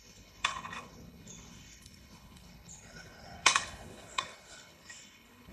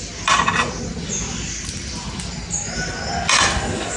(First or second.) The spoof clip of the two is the first